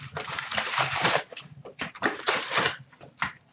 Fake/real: fake